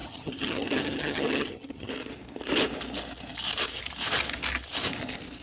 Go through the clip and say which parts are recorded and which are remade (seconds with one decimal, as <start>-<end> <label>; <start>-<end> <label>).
0.0-1.9 remade; 1.9-5.4 recorded